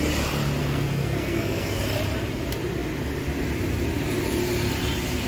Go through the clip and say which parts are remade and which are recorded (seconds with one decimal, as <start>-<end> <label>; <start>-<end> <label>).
0.0-0.6 recorded; 0.6-1.8 remade; 1.8-5.3 recorded